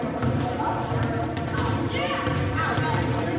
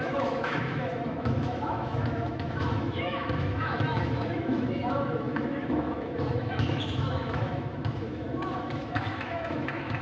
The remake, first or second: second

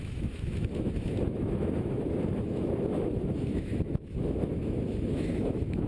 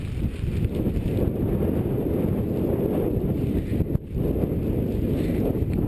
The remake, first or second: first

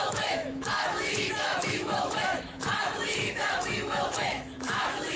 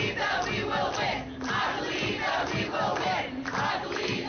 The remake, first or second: first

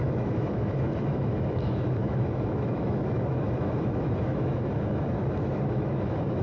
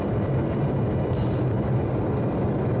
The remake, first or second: first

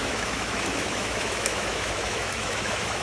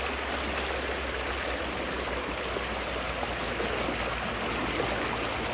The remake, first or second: first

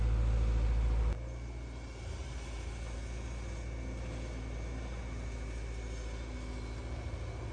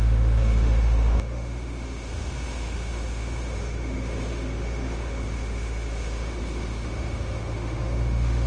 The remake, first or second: second